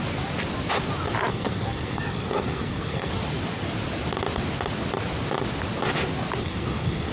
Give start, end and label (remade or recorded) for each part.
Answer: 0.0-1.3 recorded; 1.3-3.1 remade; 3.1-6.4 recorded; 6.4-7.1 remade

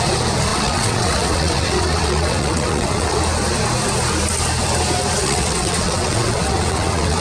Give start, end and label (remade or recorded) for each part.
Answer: 0.0-0.5 recorded; 0.5-3.2 remade; 3.2-5.2 recorded; 5.2-7.2 remade

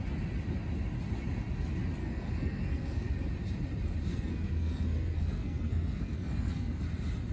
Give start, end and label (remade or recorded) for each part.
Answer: 0.0-2.0 recorded; 2.0-3.1 remade; 3.1-4.1 recorded; 4.1-6.8 remade; 6.8-7.3 recorded

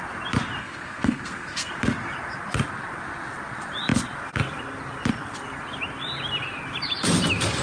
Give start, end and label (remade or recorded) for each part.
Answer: 0.0-0.6 recorded; 0.6-1.7 remade; 1.7-7.6 recorded